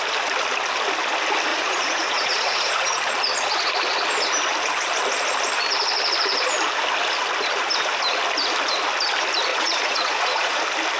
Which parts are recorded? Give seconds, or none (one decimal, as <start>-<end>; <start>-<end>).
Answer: 0.0-1.5; 3.0-9.5; 10.6-11.0